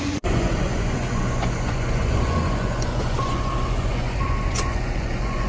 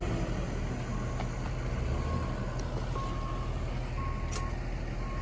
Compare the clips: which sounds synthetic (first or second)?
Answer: first